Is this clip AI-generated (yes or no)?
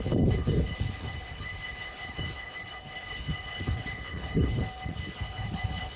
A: yes